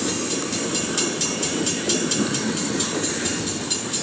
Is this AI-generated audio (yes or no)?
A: yes